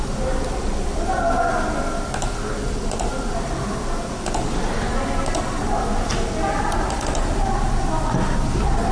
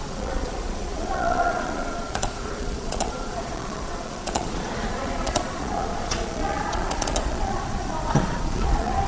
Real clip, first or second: first